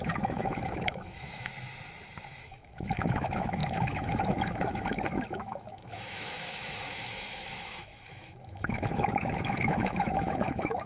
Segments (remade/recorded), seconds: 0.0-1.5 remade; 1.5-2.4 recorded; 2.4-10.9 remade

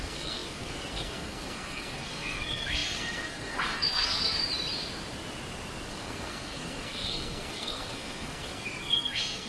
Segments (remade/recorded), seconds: 0.0-4.4 remade; 4.4-5.9 recorded; 5.9-9.5 remade